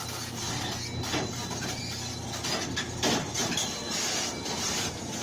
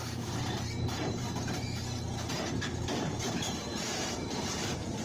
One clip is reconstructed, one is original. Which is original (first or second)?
first